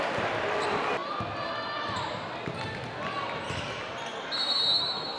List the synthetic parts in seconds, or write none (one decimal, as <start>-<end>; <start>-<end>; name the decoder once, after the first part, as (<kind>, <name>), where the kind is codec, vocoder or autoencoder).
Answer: none